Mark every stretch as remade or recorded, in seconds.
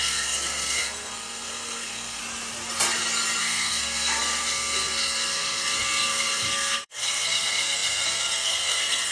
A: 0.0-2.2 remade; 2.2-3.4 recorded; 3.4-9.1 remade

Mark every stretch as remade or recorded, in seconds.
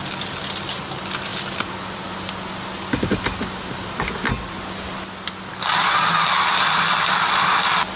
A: 0.0-8.0 recorded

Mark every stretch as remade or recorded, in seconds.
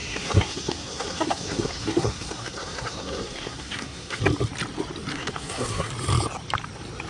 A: 0.0-4.2 remade; 4.2-5.1 recorded; 5.1-5.9 remade; 5.9-7.1 recorded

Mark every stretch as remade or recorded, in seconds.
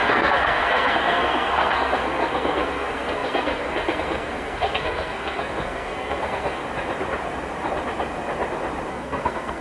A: 0.0-6.6 remade; 6.6-8.9 recorded; 8.9-9.6 remade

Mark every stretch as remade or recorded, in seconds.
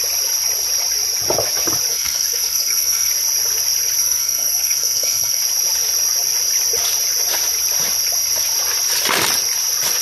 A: 0.0-1.9 recorded; 1.9-3.1 remade; 3.1-4.0 recorded; 4.0-5.4 remade; 5.4-10.0 recorded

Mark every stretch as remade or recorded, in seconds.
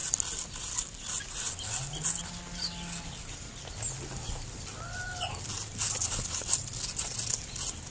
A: 0.0-7.9 recorded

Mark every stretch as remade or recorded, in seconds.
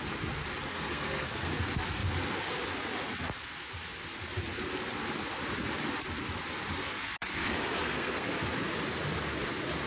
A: 0.0-0.7 recorded; 0.7-1.5 remade; 1.5-6.8 recorded; 6.8-8.3 remade; 8.3-9.9 recorded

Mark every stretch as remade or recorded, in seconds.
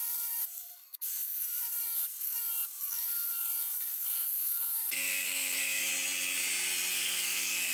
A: 0.0-5.9 remade; 5.9-6.9 recorded; 6.9-7.7 remade